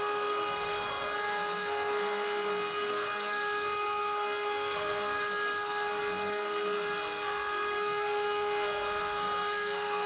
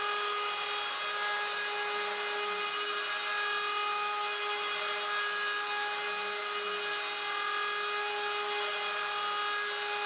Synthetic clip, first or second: first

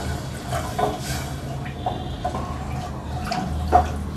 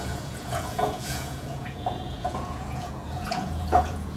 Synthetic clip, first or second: second